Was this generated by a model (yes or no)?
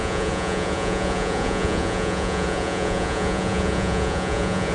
yes